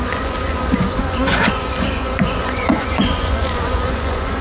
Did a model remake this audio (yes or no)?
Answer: yes